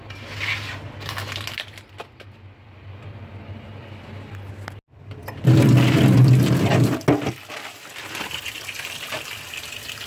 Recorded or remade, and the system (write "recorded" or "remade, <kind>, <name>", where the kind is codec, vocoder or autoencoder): recorded